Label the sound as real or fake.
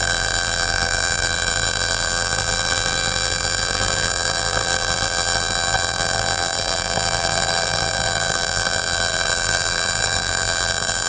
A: fake